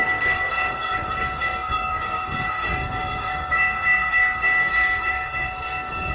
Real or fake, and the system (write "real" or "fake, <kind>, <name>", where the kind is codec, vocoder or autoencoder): fake, codec, SNAC